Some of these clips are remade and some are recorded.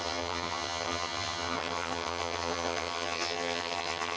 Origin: remade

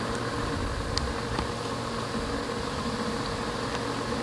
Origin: recorded